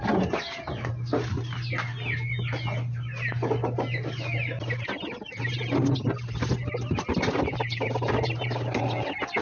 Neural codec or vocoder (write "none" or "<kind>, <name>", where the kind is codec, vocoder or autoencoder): none